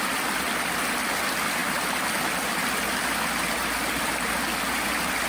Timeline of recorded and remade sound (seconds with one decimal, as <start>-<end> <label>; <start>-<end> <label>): 0.0-5.3 recorded